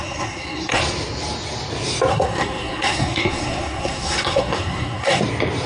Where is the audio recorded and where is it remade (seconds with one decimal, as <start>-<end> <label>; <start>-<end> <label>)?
0.0-0.8 remade; 0.8-2.1 recorded; 2.1-5.2 remade; 5.2-5.7 recorded